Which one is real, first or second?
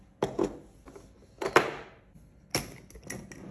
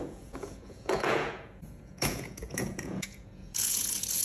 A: first